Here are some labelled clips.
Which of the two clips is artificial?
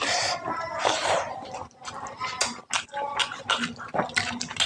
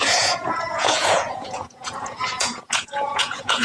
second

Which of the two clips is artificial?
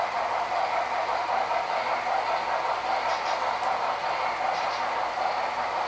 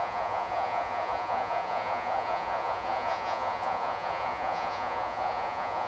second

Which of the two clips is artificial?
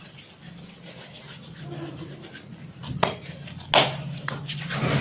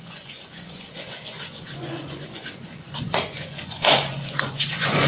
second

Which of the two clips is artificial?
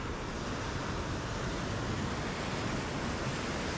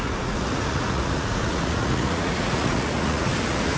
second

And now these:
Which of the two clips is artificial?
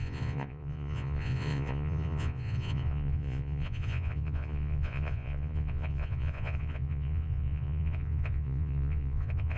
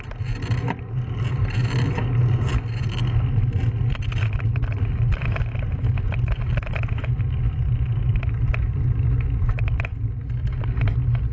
first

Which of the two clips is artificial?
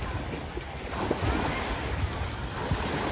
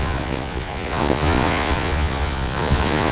second